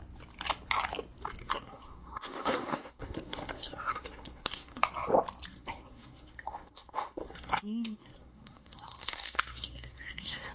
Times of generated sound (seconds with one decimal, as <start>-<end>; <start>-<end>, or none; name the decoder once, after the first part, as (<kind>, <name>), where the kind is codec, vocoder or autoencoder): 1.4-4.8 (codec, SNAC); 5.5-10.5